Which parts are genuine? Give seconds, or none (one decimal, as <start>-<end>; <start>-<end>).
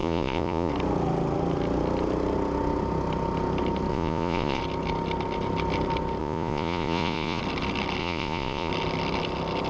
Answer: 0.7-3.9; 4.6-6.2; 7.4-8.0; 8.7-9.7